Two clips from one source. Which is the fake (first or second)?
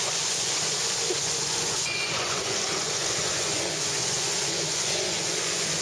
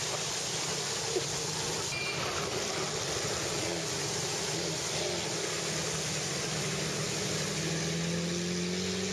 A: first